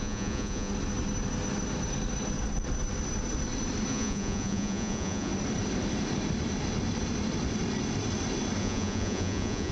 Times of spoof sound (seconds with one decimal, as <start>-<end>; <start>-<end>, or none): 0.0-0.7; 3.9-5.3; 8.6-9.7

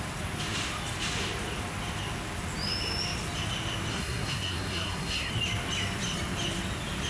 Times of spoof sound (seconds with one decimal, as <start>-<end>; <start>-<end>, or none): 3.9-5.3

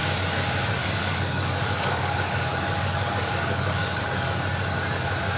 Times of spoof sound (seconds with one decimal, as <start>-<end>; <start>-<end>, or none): 0.8-4.0

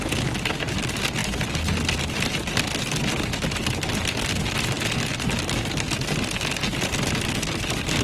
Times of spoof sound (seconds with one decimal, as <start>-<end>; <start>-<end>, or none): none

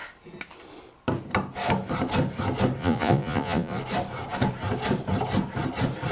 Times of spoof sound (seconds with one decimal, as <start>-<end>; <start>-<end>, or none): 2.8-3.8